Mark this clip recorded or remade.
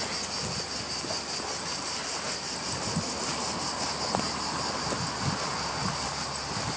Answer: recorded